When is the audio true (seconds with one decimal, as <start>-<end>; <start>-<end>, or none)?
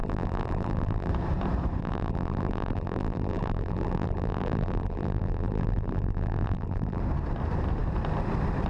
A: 1.1-1.8; 7.0-8.7